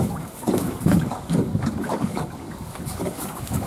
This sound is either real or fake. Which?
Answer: fake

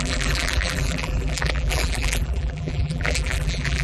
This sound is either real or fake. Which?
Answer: fake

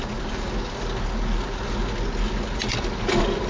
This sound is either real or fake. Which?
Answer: real